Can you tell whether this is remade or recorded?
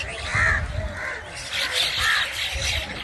recorded